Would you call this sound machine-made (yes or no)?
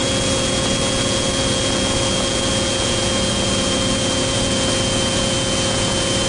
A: yes